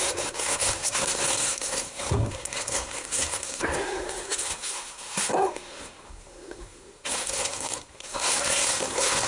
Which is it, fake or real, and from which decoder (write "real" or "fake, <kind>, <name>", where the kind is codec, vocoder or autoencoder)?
fake, codec, SNAC